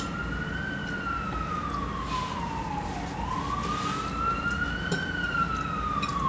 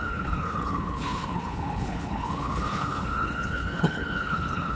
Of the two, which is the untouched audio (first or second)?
first